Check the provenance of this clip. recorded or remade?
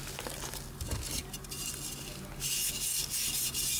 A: recorded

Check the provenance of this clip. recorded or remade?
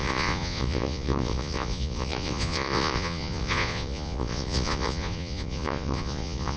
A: remade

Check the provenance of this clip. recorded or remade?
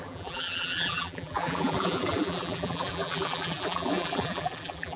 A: remade